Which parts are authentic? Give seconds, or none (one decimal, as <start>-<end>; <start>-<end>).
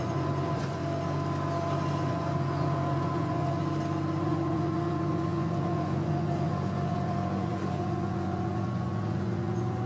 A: 0.8-2.0; 3.6-4.2